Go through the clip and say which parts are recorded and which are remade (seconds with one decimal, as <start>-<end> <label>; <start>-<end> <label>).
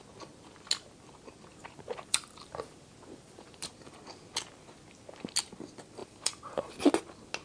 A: 0.0-1.5 recorded; 1.5-3.7 remade; 3.7-6.0 recorded; 6.0-6.7 remade; 6.7-7.4 recorded